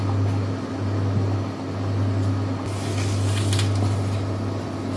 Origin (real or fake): real